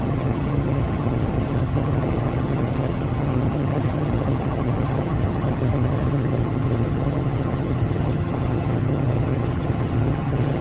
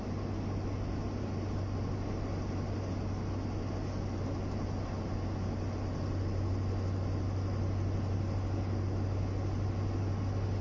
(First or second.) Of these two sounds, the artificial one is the first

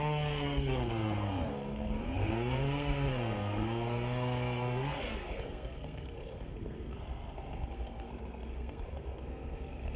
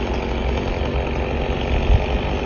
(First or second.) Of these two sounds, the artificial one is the first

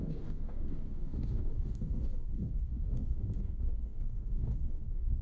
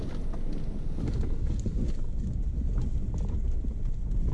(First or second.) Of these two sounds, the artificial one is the first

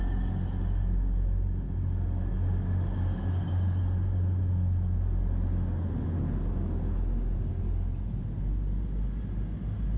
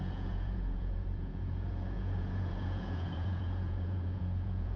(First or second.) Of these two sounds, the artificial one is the second